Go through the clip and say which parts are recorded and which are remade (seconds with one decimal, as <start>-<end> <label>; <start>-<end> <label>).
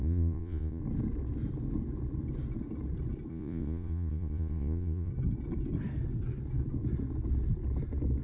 0.0-0.8 remade; 0.8-3.3 recorded; 3.3-5.1 remade; 5.1-8.2 recorded